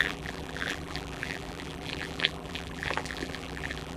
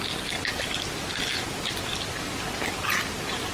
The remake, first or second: first